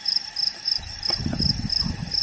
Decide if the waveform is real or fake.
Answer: fake